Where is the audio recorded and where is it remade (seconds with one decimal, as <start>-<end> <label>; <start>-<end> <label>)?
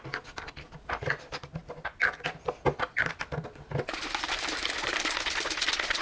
0.0-6.0 recorded